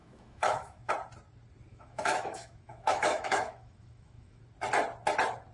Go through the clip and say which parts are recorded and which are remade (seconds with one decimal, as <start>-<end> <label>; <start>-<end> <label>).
0.0-0.9 remade; 0.9-1.7 recorded; 1.7-4.4 remade; 4.4-5.5 recorded